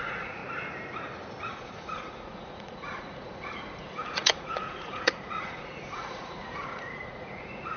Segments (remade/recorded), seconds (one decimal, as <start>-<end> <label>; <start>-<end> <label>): 0.0-0.4 remade; 0.4-1.5 recorded; 1.5-7.8 remade